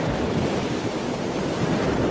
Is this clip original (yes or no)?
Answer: yes